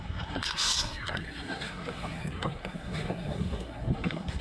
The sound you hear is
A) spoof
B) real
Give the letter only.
A